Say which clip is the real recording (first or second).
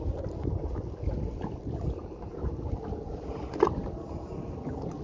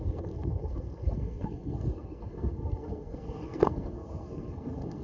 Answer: first